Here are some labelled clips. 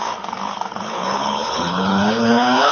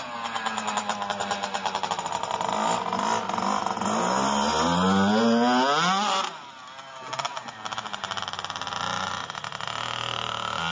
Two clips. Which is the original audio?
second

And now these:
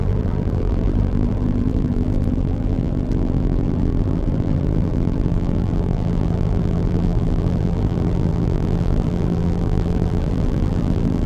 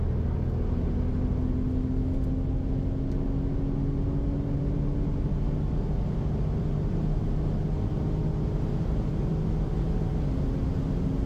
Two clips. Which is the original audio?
second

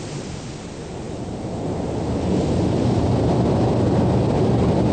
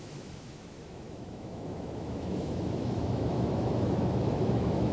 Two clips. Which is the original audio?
first